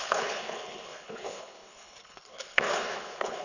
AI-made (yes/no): yes